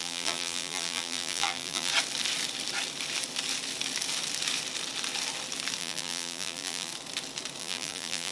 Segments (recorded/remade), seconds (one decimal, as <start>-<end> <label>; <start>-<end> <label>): 0.0-1.9 remade; 1.9-5.8 recorded; 5.8-6.9 remade; 6.9-7.6 recorded; 7.6-8.3 remade